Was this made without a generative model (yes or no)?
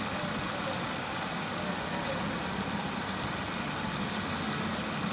yes